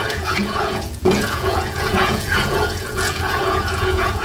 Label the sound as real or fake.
fake